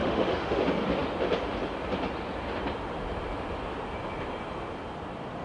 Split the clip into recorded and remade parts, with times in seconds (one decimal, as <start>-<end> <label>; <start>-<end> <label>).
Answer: 0.0-0.6 remade; 0.6-5.4 recorded